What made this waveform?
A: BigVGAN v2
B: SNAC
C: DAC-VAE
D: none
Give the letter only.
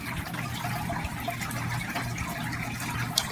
D